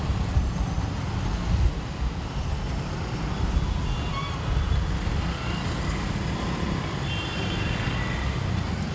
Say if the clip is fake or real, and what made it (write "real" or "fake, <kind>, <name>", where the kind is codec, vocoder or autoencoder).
real